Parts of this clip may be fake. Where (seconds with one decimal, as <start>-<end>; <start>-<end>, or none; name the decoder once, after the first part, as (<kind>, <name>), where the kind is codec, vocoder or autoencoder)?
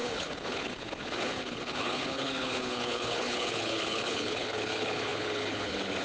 0.0-6.0 (codec, HILCodec)